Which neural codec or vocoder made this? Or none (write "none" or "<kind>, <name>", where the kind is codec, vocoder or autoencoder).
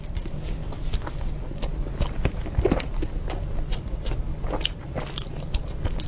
none